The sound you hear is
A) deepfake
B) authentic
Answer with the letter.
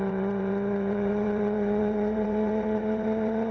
A